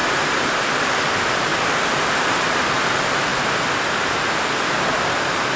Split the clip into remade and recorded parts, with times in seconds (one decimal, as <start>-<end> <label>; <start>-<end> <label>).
0.0-0.8 remade; 0.8-3.3 recorded; 3.3-4.2 remade; 4.2-5.6 recorded